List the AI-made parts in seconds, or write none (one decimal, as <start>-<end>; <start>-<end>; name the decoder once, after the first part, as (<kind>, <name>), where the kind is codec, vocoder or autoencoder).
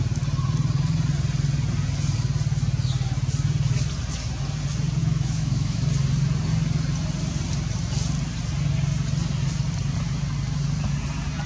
5.0-5.8 (autoencoder, DAC-VAE)